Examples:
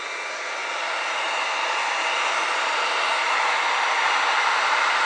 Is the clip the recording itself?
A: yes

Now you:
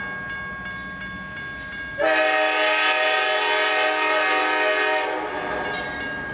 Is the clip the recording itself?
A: yes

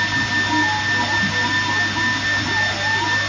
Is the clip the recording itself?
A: yes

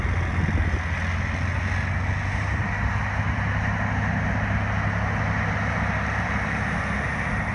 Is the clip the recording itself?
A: yes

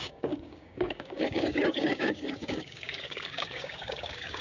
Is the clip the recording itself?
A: no